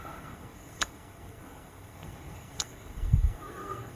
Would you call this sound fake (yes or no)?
yes